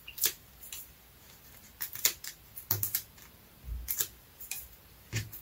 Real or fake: fake